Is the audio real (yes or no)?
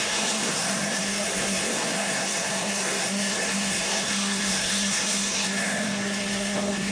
no